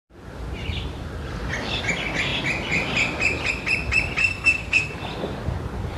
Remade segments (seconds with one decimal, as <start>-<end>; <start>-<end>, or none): 4.2-4.9